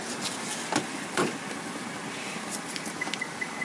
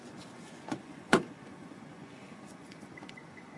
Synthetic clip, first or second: second